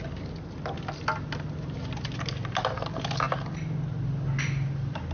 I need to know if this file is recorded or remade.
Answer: recorded